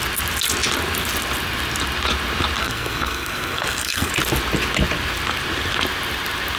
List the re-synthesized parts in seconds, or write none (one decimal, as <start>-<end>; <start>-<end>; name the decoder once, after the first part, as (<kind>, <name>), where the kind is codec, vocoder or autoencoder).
2.6-4.1 (codec, SNAC)